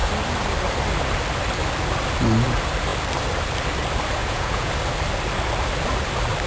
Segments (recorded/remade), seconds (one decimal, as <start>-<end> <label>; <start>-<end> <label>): 0.0-4.2 recorded; 4.2-4.7 remade; 4.7-6.5 recorded